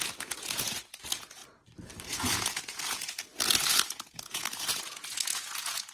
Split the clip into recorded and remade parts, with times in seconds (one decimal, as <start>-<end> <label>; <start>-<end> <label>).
0.0-1.4 remade; 1.4-2.1 recorded; 2.1-5.9 remade